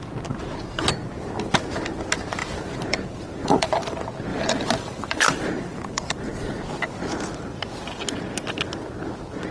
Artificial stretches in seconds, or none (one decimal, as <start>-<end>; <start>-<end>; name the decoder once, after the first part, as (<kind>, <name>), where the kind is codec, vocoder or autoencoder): 2.4-3.8 (vocoder, BigVGAN v2); 4.3-6.3